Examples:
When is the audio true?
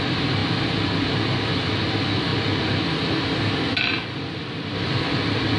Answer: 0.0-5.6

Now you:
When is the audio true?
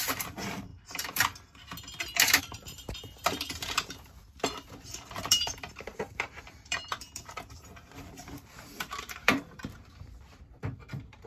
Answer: 0.7-2.4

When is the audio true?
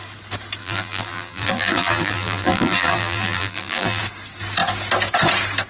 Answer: 0.0-0.6; 4.0-5.7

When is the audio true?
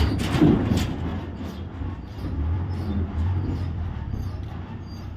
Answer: 0.0-1.1; 1.7-2.1